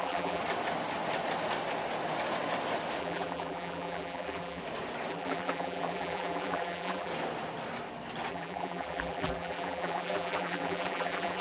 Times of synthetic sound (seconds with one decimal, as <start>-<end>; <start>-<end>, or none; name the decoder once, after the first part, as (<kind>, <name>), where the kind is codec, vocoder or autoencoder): 0.0-0.4 (vocoder, BigVGAN v2); 3.0-4.6; 5.1-7.1; 8.3-11.4